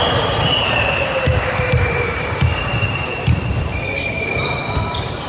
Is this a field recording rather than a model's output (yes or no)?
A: no